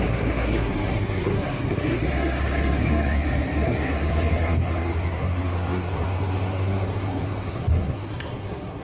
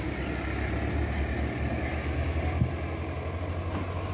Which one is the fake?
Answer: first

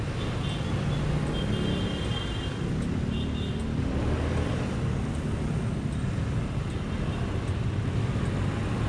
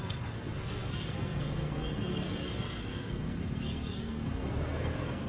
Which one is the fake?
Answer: second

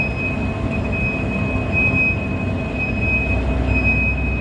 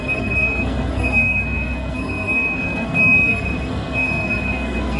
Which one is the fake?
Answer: second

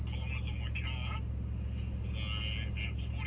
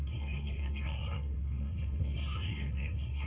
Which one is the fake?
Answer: second